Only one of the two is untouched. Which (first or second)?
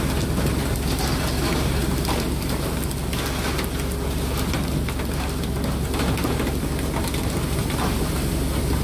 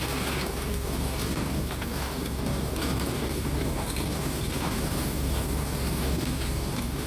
first